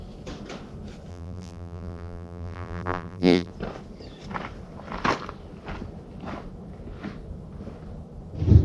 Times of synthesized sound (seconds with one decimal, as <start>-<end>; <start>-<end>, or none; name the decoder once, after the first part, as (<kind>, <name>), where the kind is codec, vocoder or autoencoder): 1.1-3.5 (vocoder, BigVGAN v2)